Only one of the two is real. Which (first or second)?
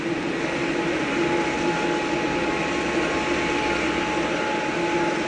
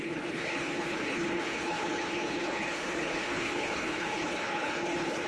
first